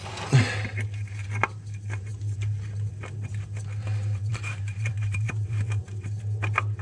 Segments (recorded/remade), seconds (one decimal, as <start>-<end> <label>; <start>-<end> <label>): 0.0-4.3 recorded; 4.3-5.8 remade; 5.8-6.8 recorded